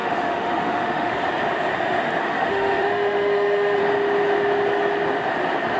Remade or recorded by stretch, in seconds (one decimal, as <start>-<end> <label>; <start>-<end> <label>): 0.0-1.1 remade; 1.1-2.2 recorded; 2.2-3.8 remade; 3.8-5.8 recorded